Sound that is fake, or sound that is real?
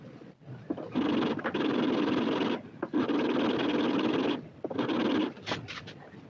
real